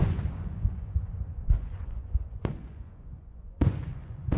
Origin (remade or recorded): remade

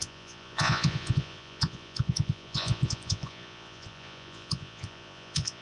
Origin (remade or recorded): remade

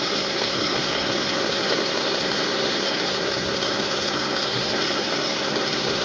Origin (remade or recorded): remade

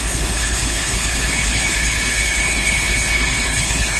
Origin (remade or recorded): remade